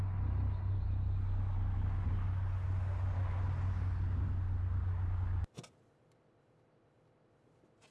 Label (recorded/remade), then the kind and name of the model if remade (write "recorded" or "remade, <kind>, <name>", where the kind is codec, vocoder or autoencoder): recorded